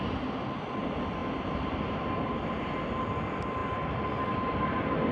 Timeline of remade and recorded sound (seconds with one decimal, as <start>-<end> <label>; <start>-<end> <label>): 0.0-5.1 recorded